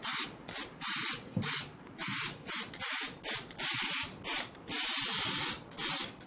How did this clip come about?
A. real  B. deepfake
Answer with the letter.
A